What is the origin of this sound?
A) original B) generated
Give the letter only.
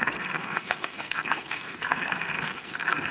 B